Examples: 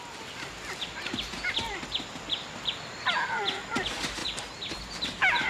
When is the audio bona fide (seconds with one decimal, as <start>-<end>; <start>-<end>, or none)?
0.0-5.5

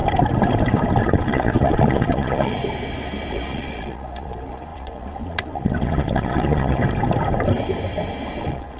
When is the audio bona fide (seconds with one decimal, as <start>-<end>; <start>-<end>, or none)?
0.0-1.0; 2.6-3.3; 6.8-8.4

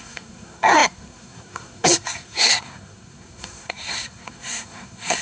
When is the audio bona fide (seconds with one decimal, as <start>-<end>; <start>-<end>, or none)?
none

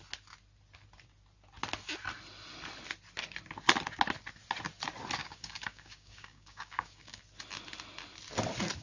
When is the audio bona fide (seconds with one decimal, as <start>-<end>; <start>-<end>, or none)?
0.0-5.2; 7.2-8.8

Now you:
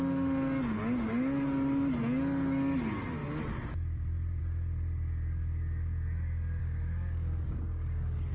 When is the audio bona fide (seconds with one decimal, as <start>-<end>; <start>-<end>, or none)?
0.0-6.6

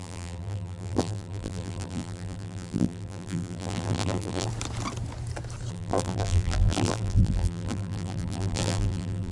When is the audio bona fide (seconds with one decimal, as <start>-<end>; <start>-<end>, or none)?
4.5-5.7

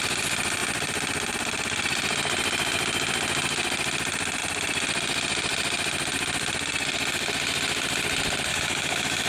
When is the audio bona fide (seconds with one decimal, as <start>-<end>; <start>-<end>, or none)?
0.0-8.5